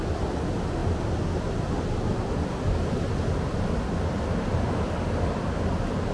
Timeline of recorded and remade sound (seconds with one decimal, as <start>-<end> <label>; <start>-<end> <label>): 0.0-6.1 recorded

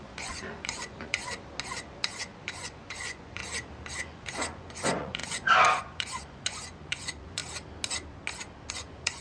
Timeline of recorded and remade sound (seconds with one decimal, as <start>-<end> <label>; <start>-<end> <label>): 0.0-1.2 remade; 1.2-1.8 recorded; 1.8-3.4 remade; 3.4-4.0 recorded; 4.0-7.4 remade; 7.4-8.7 recorded; 8.7-9.2 remade

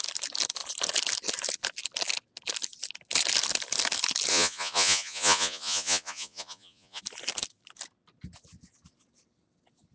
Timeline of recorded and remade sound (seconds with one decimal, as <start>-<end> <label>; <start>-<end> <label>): 0.0-4.3 recorded; 4.3-7.0 remade; 7.0-9.9 recorded

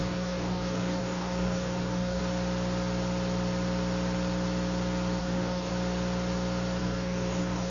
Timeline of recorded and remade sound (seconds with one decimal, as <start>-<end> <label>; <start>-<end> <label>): 0.0-2.2 remade; 2.2-5.2 recorded; 5.2-5.7 remade; 5.7-6.8 recorded; 6.8-7.7 remade

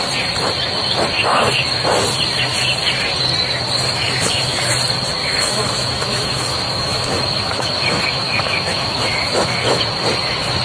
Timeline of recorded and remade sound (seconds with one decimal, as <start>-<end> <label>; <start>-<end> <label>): 0.0-4.0 recorded; 4.0-4.7 remade; 4.7-5.2 recorded; 5.2-9.8 remade; 9.8-10.6 recorded

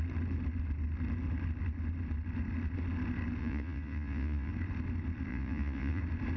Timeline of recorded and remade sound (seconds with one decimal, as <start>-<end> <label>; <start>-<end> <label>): 0.0-3.4 recorded; 3.4-4.5 remade; 4.5-5.3 recorded; 5.3-6.0 remade; 6.0-6.4 recorded

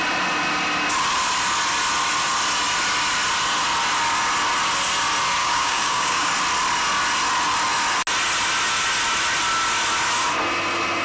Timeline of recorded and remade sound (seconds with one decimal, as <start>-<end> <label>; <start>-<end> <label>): 0.0-5.4 recorded; 5.4-6.3 remade; 6.3-11.0 recorded

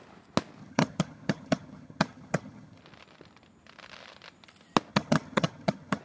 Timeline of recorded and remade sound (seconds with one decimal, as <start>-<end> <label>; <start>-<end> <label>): 0.0-0.6 recorded; 0.6-2.8 remade; 2.8-4.9 recorded; 4.9-6.0 remade